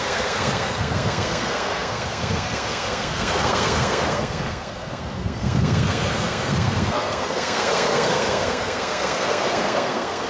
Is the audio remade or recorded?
remade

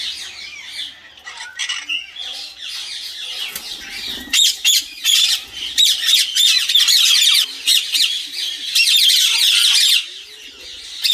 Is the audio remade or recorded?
recorded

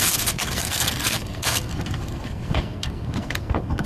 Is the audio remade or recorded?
remade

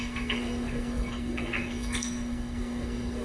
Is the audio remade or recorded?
remade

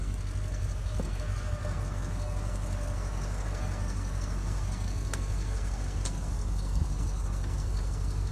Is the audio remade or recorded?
remade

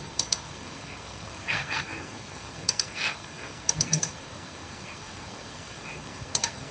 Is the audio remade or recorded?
remade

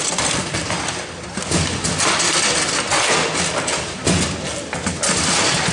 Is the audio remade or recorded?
recorded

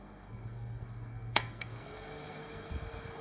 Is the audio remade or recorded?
remade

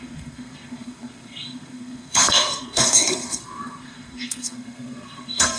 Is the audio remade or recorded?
remade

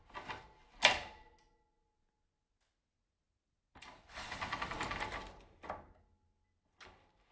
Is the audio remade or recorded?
recorded